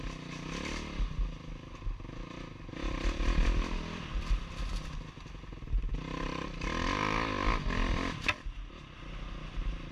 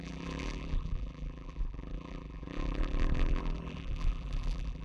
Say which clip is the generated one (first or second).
second